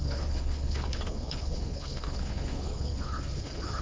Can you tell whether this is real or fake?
fake